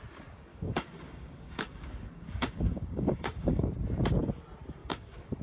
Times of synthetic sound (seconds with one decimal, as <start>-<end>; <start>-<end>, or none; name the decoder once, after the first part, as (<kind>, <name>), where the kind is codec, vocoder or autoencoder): 0.5-3.7 (codec, DAC); 4.8-5.4